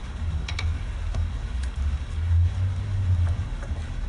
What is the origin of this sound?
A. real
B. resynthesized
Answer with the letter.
B